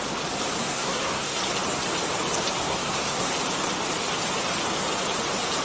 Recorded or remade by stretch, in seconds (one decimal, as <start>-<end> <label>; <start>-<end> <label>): 0.0-0.6 recorded; 0.6-1.4 remade; 1.4-2.6 recorded; 2.6-3.3 remade; 3.3-5.6 recorded